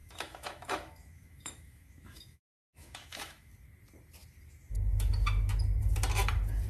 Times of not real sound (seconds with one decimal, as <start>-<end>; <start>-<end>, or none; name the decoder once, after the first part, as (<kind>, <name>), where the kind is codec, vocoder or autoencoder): 0.0-3.5 (autoencoder, DAC-VAE)